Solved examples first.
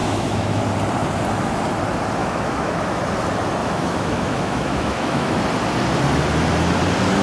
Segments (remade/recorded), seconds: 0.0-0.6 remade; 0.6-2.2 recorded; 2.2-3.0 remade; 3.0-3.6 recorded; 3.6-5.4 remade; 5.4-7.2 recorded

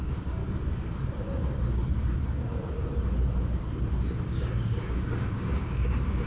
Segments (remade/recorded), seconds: 0.0-0.4 remade; 0.4-4.2 recorded; 4.2-6.3 remade

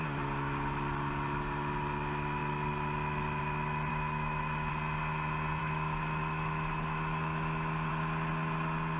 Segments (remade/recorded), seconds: 0.0-3.9 recorded; 3.9-4.7 remade; 4.7-5.6 recorded; 5.6-7.9 remade; 7.9-9.0 recorded

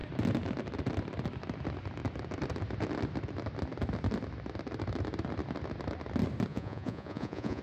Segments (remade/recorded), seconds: 0.0-6.5 recorded; 6.5-7.6 remade

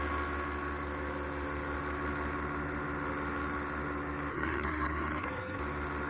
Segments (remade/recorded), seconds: 0.0-4.3 recorded; 4.3-5.6 remade; 5.6-6.1 recorded

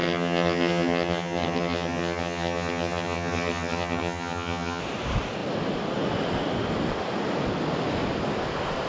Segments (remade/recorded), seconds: 0.0-4.8 remade; 4.8-8.9 recorded

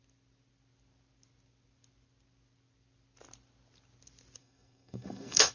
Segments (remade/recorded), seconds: 0.0-4.4 recorded; 4.4-5.5 remade

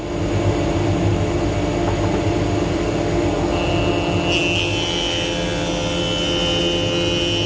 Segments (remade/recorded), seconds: 0.0-7.5 recorded